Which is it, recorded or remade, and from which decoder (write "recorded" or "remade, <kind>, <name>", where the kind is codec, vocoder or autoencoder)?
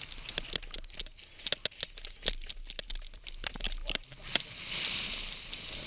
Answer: recorded